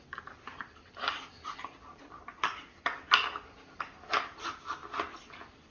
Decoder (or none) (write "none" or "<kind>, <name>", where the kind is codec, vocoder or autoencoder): none